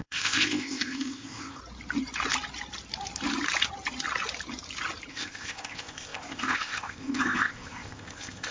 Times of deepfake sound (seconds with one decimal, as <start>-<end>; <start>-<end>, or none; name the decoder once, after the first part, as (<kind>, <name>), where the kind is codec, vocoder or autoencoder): 0.0-1.6 (codec, ZipCodec); 5.1-8.5